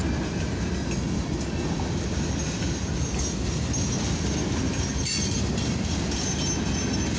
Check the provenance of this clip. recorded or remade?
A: recorded